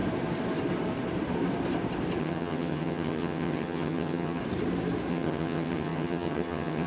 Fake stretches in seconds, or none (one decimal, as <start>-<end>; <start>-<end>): 2.2-4.4; 5.1-6.9